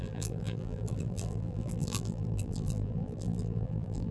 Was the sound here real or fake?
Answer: fake